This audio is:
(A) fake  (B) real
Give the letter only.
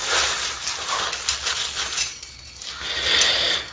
B